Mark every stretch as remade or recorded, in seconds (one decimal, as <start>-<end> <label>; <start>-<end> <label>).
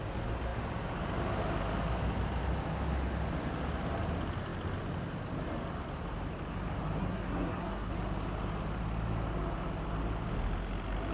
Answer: 0.0-7.0 recorded; 7.0-7.9 remade; 7.9-11.1 recorded